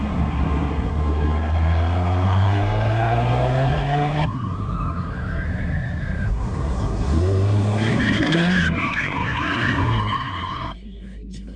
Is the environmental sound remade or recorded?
remade